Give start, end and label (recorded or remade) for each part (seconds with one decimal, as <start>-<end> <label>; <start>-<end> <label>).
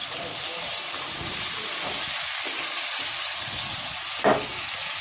0.0-5.0 recorded